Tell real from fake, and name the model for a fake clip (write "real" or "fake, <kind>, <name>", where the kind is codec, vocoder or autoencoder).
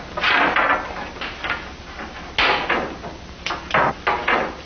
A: real